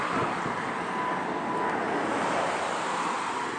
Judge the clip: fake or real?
real